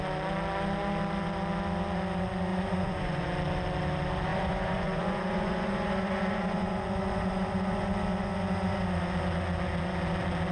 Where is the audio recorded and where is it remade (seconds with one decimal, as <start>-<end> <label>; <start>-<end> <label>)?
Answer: 0.0-2.5 recorded; 2.5-3.3 remade; 3.3-4.3 recorded; 4.3-7.9 remade; 7.9-10.5 recorded